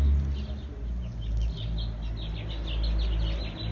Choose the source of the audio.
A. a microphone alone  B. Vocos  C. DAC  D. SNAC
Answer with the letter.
A